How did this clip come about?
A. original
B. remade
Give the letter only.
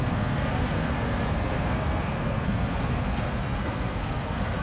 B